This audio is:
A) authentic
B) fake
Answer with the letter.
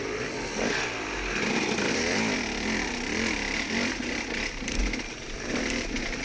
A